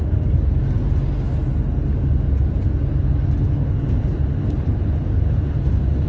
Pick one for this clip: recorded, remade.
recorded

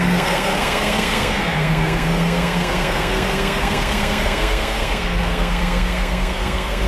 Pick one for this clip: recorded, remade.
remade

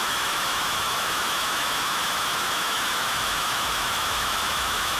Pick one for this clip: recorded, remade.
remade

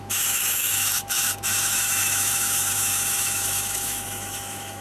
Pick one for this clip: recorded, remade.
remade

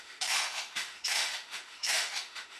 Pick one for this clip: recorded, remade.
remade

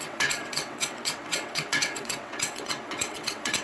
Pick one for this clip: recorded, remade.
remade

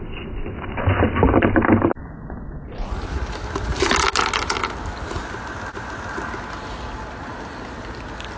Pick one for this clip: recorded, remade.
recorded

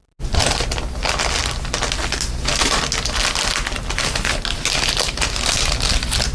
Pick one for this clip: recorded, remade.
recorded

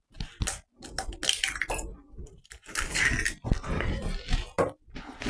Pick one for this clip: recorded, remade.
recorded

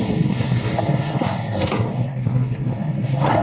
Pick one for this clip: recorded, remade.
remade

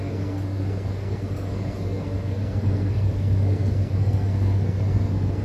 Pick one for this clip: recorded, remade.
remade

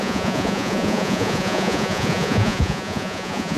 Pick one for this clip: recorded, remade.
remade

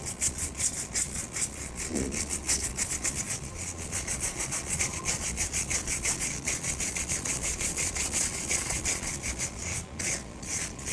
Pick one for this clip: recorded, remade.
remade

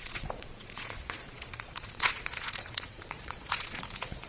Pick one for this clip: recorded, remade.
remade